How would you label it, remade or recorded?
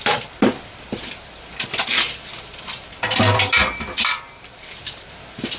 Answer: remade